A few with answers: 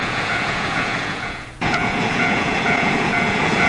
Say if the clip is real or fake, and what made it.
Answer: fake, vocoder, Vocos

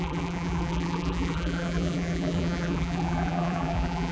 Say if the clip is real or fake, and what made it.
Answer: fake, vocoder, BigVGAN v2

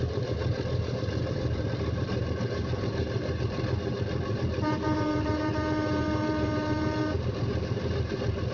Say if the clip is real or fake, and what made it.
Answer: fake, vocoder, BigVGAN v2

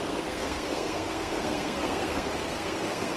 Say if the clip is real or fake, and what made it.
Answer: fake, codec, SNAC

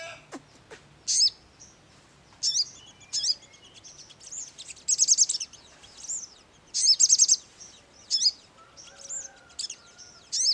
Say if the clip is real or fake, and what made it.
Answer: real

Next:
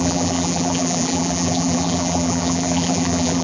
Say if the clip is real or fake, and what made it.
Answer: fake, vocoder, BigVGAN v2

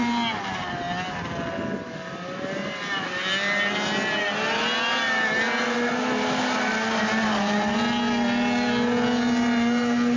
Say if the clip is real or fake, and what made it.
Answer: real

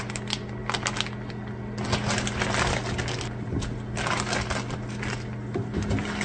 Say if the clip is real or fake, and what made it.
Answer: real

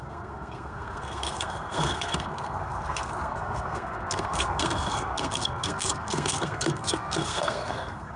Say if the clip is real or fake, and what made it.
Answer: fake, codec, SNAC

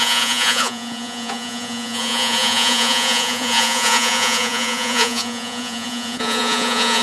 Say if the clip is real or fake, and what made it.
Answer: fake, vocoder, Vocos